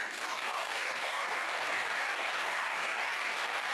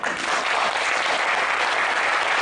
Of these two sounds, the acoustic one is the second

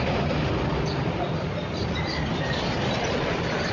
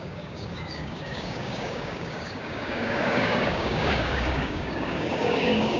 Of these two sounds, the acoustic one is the first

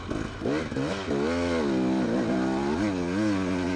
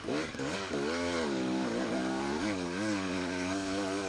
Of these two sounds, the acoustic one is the first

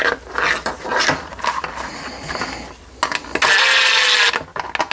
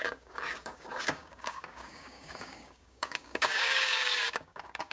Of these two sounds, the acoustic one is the first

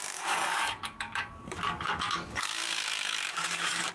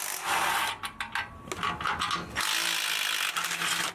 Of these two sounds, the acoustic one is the second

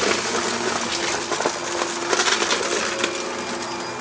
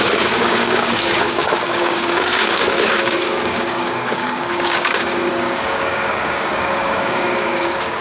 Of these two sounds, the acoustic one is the first